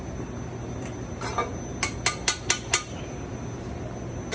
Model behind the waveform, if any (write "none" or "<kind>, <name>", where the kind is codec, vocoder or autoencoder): none